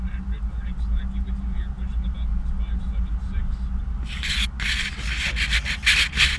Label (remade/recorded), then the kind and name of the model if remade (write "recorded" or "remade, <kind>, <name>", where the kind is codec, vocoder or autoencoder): recorded